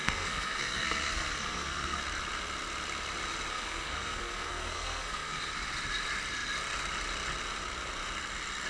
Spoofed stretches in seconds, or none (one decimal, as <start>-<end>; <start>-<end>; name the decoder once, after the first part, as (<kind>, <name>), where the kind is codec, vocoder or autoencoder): 0.0-2.0 (codec, SNAC); 3.5-5.4

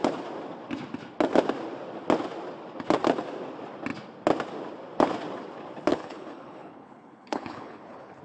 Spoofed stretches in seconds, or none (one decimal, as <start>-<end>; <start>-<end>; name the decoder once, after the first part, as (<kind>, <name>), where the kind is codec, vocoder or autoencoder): 5.9-8.2 (codec, HILCodec)